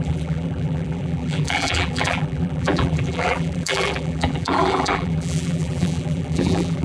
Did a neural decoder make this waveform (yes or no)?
yes